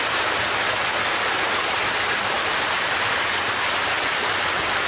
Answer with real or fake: real